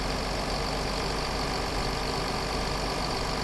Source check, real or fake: real